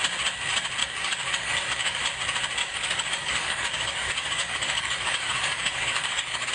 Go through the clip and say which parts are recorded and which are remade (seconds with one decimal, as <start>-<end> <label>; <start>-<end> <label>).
0.0-0.8 recorded; 0.8-2.0 remade; 2.0-2.6 recorded; 2.6-6.5 remade